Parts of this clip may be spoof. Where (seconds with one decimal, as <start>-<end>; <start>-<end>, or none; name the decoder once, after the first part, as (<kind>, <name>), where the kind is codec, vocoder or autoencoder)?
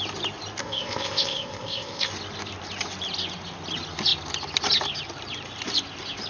0.6-2.1 (codec, ZipCodec)